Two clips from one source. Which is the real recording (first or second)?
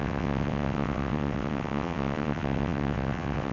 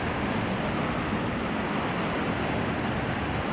second